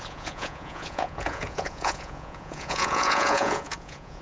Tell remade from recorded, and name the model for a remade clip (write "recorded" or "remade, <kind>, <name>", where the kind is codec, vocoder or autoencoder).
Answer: remade, vocoder, Vocos